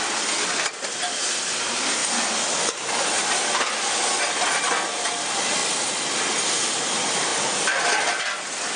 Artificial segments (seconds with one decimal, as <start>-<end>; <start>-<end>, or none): none

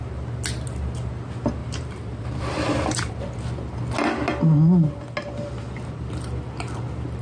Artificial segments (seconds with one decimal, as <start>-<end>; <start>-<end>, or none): 1.6-3.1